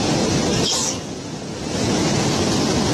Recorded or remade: recorded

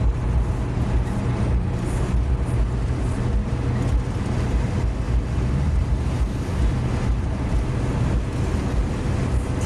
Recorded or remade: recorded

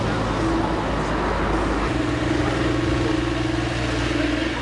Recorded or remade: recorded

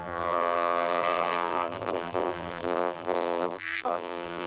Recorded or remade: remade